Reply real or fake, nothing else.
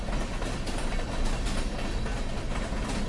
real